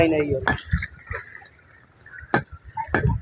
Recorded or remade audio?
recorded